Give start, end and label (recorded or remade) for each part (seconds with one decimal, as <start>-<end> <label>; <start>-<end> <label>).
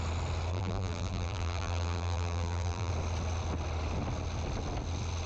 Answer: 0.0-0.5 recorded; 0.5-2.9 remade; 2.9-5.3 recorded